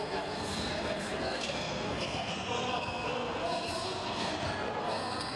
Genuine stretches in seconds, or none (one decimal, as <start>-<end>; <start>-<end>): 4.3-4.8